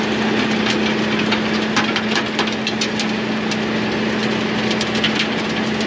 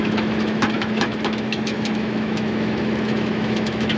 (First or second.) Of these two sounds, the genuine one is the first